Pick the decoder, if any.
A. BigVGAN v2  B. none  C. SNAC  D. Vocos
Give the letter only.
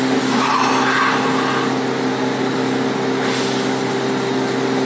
B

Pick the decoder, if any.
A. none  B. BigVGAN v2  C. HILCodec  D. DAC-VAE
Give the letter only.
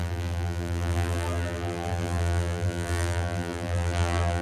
B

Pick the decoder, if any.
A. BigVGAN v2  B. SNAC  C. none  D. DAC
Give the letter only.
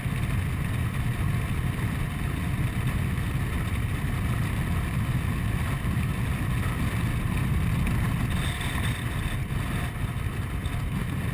C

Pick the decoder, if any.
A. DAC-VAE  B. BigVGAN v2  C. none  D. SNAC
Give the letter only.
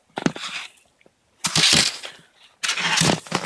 C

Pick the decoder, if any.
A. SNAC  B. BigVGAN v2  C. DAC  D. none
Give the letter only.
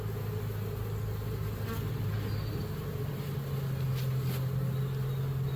D